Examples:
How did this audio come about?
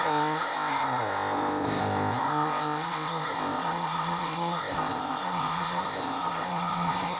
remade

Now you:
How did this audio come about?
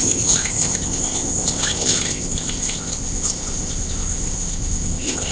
remade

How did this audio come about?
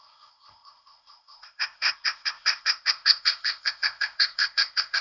remade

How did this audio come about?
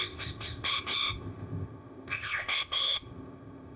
remade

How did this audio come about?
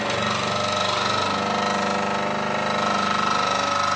recorded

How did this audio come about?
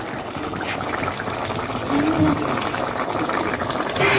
recorded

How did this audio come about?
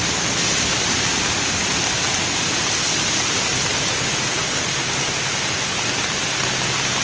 recorded